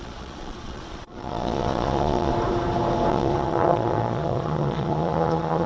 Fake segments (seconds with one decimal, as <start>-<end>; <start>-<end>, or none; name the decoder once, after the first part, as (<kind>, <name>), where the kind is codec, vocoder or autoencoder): 0.0-2.3 (vocoder, Vocos); 3.1-5.7